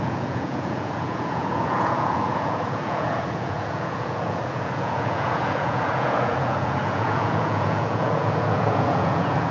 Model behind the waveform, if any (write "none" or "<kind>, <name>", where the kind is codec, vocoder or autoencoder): vocoder, Vocos